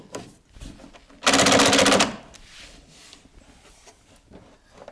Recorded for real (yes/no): yes